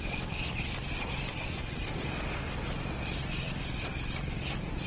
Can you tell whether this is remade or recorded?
recorded